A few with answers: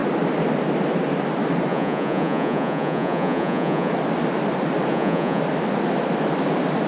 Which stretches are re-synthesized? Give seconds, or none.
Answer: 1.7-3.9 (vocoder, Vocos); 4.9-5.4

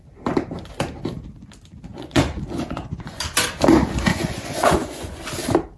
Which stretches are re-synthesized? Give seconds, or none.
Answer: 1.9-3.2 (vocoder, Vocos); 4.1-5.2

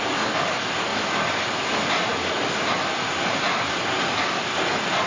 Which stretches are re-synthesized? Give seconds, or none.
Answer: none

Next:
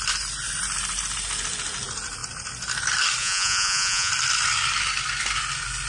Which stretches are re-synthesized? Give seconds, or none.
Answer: 3.2-4.1 (vocoder, Vocos)

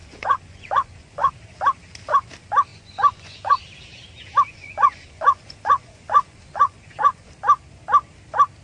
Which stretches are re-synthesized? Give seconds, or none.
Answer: 0.0-1.3 (vocoder, Vocos); 2.7-3.6; 4.5-7.3

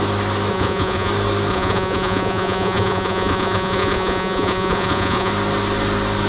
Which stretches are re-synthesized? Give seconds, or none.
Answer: 0.5-1.1 (vocoder, Vocos); 1.5-5.3

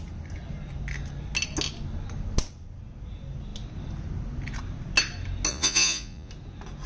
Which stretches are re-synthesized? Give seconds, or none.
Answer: 5.5-6.3 (vocoder, Vocos)